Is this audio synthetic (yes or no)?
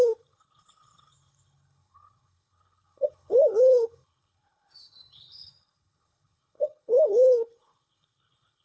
yes